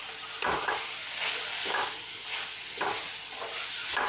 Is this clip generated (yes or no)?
no